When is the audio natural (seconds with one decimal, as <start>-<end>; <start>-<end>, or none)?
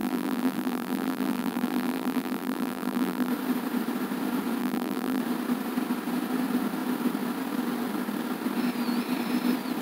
3.3-4.6; 5.2-9.8